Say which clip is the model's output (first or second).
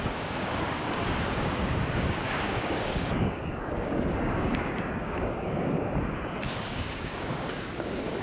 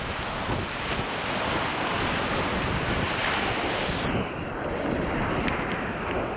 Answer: first